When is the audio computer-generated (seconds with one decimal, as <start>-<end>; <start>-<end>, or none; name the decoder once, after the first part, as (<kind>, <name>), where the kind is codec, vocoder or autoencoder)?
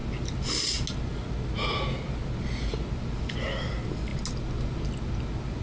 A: none